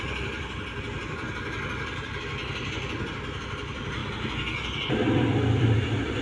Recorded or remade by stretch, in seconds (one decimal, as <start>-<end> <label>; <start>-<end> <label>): 0.0-4.0 remade; 4.0-5.1 recorded; 5.1-6.2 remade